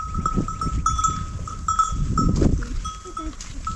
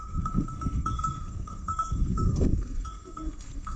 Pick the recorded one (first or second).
first